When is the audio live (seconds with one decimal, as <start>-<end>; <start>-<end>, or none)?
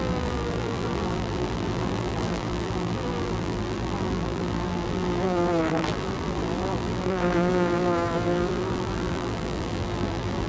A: none